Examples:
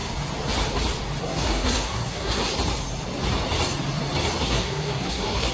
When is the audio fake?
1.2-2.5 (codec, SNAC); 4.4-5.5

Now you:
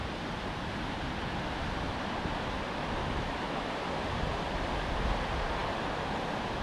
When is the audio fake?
3.0-3.7 (autoencoder, DAC-VAE)

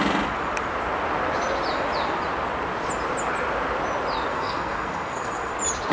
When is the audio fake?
4.3-5.5 (codec, SNAC)

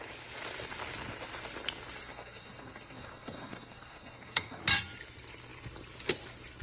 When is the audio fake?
2.0-4.6 (codec, SNAC)

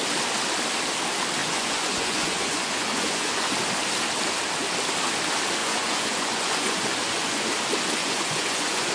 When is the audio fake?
1.4-3.5 (vocoder, Vocos); 5.6-7.5; 8.0-8.9

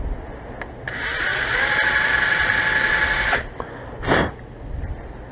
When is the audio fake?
1.3-3.6 (vocoder, BigVGAN v2)